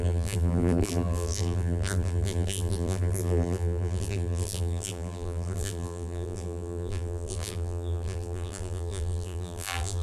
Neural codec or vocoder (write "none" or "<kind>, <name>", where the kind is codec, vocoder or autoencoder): vocoder, BigVGAN v2